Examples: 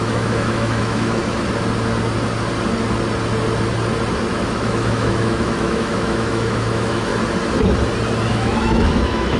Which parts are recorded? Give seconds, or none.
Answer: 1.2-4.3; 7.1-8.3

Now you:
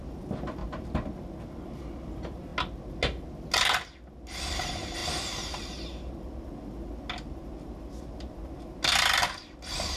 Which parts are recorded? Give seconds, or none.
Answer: 0.0-10.0

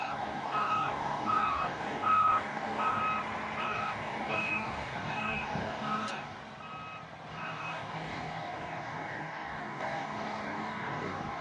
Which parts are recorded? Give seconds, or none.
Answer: 3.0-3.6; 6.4-7.3

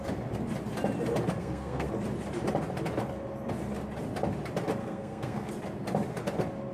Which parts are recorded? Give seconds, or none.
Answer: 0.0-1.4; 1.9-4.8; 5.5-6.7